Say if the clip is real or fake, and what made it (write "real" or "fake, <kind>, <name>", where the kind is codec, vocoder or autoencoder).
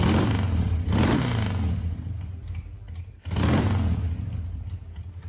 real